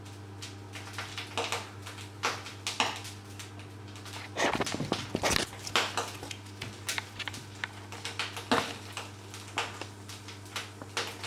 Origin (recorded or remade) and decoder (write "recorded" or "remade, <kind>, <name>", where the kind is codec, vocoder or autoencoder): recorded